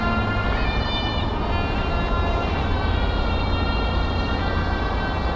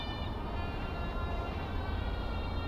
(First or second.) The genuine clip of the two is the first